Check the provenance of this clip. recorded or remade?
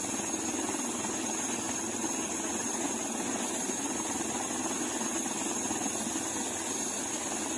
recorded